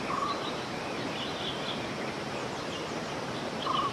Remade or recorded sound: remade